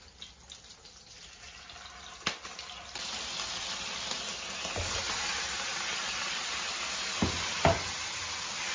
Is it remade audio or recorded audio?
recorded